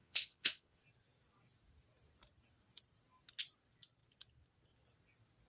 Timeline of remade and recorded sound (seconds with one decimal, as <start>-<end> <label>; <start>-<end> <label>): 0.0-0.8 remade; 0.8-5.5 recorded